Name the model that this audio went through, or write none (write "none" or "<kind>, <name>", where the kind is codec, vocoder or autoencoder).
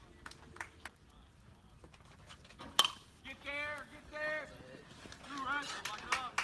none